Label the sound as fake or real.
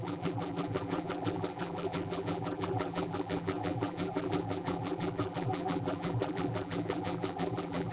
fake